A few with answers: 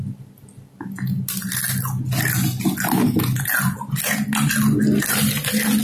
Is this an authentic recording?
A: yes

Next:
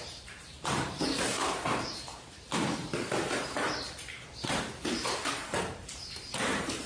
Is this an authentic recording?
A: no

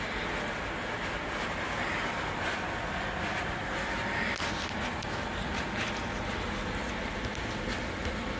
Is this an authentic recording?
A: yes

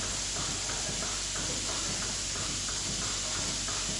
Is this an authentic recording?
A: yes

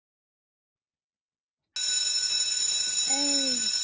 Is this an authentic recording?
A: yes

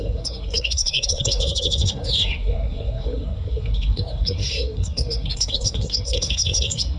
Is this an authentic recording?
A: no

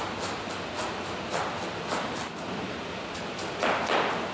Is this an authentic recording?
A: yes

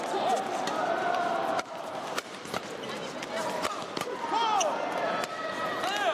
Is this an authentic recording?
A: yes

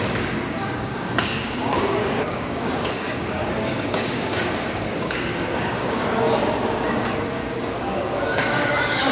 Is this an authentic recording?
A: no